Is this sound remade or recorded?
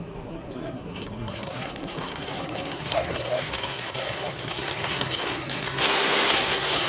remade